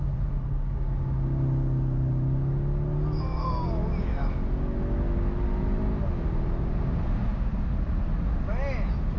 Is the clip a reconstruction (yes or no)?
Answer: no